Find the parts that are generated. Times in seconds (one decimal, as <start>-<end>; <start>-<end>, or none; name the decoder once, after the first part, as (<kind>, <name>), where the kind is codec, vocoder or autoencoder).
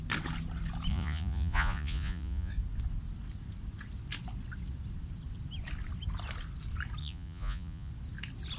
0.9-2.5 (vocoder, Vocos); 7.0-7.9